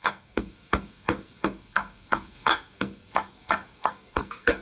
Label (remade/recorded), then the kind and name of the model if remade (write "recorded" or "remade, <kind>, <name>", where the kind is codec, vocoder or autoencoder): remade, codec, SNAC